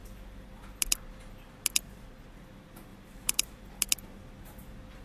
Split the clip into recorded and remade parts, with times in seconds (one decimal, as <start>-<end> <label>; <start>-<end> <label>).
0.0-2.9 recorded; 2.9-3.7 remade; 3.7-5.0 recorded